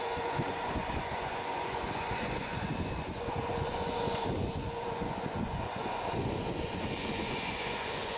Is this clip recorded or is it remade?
remade